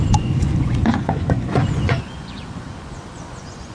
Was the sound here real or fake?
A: fake